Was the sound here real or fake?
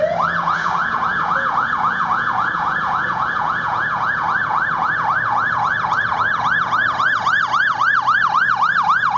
fake